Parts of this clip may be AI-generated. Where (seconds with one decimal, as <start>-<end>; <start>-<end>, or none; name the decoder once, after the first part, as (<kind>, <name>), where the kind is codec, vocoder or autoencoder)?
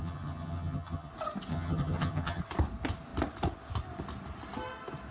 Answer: 0.0-1.1 (vocoder, HiFi-GAN); 1.5-2.4